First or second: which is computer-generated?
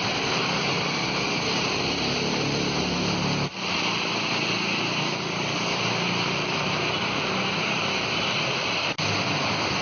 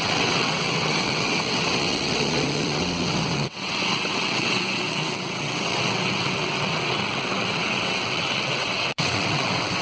second